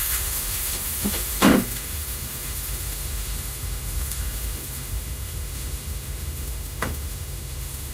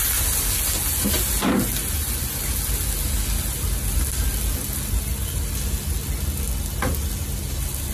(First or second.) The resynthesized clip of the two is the first